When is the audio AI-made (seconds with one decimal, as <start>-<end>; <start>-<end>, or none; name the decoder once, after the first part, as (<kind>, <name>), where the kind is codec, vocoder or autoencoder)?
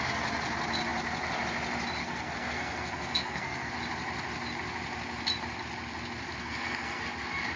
2.0-3.7 (codec, SNAC); 6.4-7.0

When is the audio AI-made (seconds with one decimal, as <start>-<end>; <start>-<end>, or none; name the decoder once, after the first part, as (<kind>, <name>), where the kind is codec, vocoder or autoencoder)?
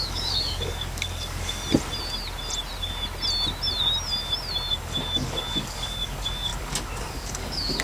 0.0-1.6 (codec, DAC); 4.7-7.8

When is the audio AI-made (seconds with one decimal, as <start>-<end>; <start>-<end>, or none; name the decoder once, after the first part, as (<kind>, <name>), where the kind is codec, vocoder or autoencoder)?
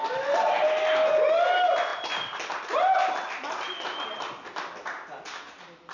none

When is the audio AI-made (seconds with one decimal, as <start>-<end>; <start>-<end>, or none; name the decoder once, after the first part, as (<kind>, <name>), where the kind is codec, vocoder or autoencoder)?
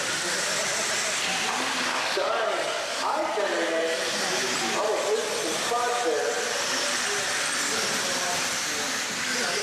1.9-3.3 (codec, DAC)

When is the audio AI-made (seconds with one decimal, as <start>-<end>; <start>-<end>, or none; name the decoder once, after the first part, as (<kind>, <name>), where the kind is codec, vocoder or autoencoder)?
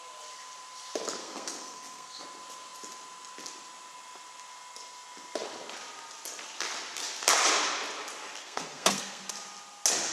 1.2-2.2 (codec, SNAC); 8.4-9.2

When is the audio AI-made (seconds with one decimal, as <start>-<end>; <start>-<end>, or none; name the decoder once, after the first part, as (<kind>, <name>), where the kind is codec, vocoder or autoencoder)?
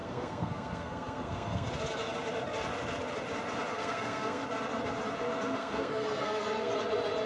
0.0-1.7 (codec, SNAC); 3.7-4.4; 5.6-6.7